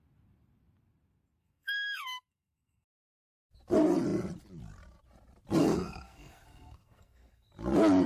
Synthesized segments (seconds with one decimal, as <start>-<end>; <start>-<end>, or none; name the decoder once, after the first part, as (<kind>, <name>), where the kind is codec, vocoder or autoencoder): 1.4-3.5 (codec, SNAC); 5.6-7.5